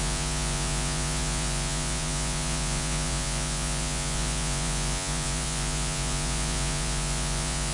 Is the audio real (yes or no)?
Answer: no